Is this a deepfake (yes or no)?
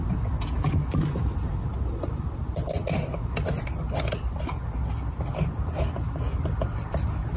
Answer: no